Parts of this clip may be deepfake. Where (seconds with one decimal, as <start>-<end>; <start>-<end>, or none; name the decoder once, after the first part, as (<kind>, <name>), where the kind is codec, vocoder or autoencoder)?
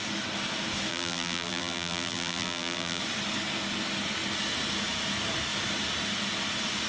0.9-3.0 (vocoder, BigVGAN v2)